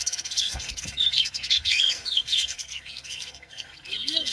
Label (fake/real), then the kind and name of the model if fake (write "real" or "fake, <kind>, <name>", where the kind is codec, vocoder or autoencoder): fake, codec, SNAC